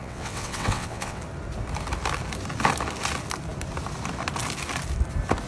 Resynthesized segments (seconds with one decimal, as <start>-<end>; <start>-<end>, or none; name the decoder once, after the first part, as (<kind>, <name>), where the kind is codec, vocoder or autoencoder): 0.0-1.2 (vocoder, WaveNeXt)